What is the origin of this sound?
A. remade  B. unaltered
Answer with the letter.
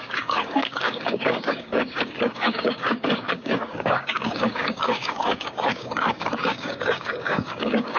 A